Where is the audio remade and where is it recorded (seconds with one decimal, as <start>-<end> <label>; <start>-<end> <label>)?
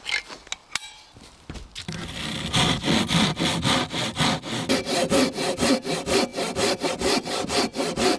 0.0-8.2 recorded